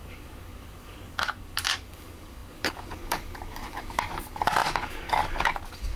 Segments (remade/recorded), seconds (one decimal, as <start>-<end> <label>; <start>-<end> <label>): 0.0-6.0 remade

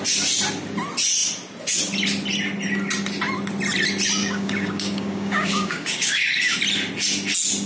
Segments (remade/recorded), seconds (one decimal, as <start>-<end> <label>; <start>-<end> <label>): 0.0-4.2 recorded; 4.2-6.2 remade; 6.2-7.7 recorded

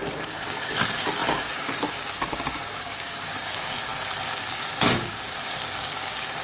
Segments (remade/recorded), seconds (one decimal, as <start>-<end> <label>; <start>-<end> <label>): 0.0-3.9 remade; 3.9-4.5 recorded; 4.5-6.4 remade

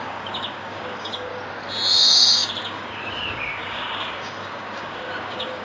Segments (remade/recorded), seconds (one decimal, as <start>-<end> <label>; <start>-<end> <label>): 0.0-1.3 remade; 1.3-1.9 recorded; 1.9-5.6 remade